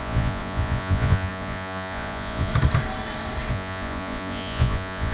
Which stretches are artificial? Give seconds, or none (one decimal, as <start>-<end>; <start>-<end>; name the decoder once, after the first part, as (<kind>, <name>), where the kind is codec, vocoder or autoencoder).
0.0-2.5 (vocoder, Vocos); 3.5-5.1